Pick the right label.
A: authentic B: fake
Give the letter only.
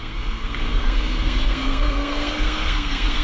B